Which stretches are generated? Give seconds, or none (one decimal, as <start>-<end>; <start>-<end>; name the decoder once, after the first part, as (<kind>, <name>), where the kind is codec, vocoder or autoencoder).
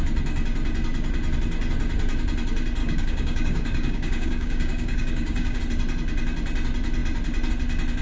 2.8-5.6 (codec, DAC)